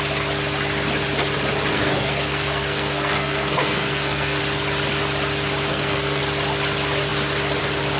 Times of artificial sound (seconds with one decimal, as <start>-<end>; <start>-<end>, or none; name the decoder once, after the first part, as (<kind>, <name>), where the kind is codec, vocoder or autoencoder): 1.7-4.4 (codec, SNAC); 5.7-6.2